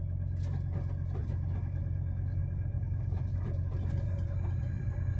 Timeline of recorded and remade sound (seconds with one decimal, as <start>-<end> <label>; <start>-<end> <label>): 0.0-1.2 recorded; 1.2-1.8 remade; 1.8-2.4 recorded; 2.4-5.2 remade